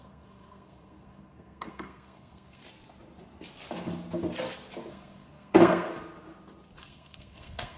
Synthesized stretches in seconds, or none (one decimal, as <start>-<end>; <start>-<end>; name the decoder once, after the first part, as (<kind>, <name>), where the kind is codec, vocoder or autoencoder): 0.0-2.6 (codec, SNAC); 4.9-5.9; 6.8-7.8